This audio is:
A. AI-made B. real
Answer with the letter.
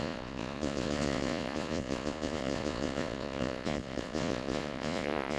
A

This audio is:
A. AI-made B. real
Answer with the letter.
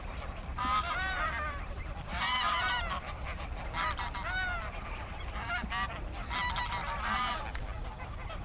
B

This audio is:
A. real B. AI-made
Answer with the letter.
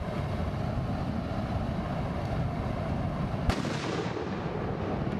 A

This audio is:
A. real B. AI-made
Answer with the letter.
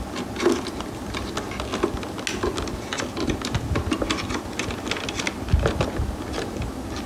A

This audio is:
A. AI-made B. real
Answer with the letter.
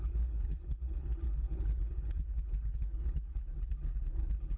A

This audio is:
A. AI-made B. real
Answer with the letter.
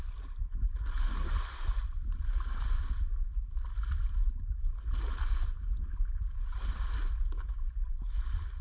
B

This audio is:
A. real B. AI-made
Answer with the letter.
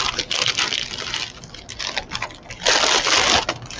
A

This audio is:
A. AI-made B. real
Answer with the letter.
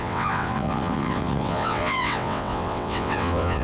A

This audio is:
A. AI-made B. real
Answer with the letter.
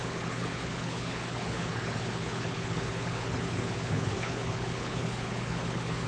A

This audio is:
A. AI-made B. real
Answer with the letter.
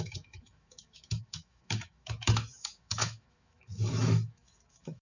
A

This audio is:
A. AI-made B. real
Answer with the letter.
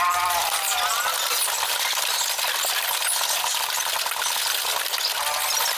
B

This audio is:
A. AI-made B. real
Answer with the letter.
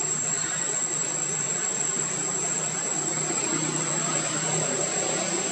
A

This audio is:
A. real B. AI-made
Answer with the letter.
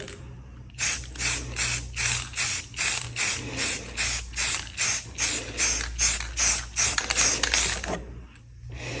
A